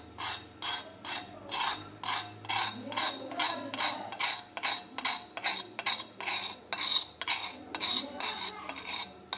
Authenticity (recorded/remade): recorded